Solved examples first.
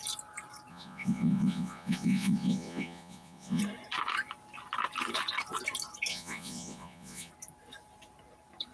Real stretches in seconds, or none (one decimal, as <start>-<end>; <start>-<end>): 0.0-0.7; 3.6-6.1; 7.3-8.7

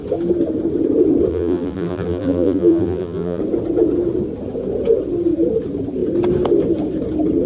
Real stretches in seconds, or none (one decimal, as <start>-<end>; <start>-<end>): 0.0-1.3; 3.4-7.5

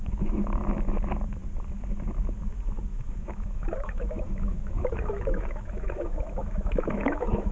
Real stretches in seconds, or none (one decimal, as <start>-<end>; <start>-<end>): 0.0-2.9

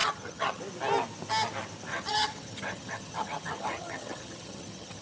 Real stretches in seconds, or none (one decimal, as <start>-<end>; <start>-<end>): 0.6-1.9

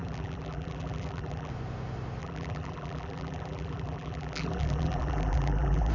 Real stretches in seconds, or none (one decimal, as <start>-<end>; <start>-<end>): 1.5-2.2

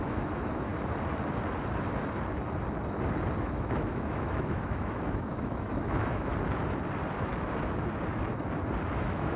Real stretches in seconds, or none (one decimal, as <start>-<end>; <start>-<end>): 0.7-3.4; 6.3-9.0